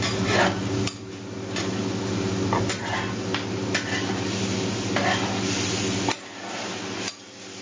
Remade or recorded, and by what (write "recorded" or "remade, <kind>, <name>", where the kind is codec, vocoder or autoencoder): recorded